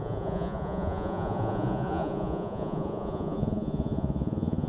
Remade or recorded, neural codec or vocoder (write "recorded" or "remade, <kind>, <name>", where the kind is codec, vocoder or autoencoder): remade, vocoder, Vocos